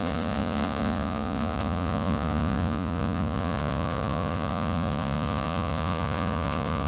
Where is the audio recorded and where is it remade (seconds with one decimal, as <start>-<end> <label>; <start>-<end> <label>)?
0.0-6.9 remade